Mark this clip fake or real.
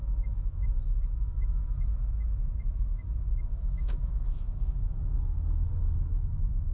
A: fake